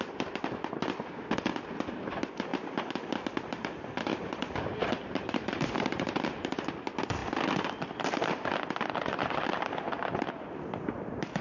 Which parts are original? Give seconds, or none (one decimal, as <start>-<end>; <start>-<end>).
0.0-4.1; 6.7-11.4